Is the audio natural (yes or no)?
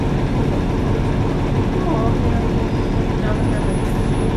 yes